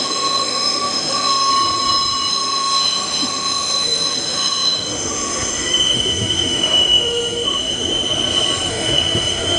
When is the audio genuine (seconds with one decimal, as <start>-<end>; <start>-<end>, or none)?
1.5-2.3; 7.9-8.7

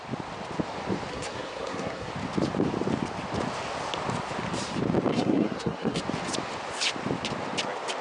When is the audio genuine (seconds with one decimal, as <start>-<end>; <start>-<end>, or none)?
0.0-1.1; 2.1-5.1; 6.0-8.0

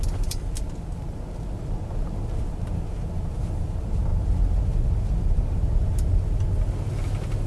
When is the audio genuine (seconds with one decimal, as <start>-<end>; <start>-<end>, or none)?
0.0-7.5

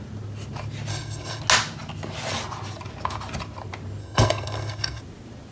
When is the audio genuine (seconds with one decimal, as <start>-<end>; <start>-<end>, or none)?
0.0-0.9; 1.4-4.0; 5.0-5.5

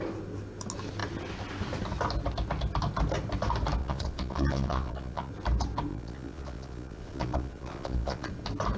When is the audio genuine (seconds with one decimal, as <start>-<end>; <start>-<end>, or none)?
0.0-3.8; 5.3-5.9; 8.3-8.8

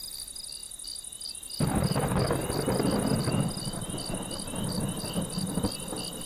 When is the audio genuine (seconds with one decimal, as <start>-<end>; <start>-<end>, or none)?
0.0-6.3

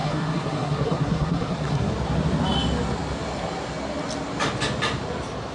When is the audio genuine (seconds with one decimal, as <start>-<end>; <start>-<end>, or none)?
1.9-5.5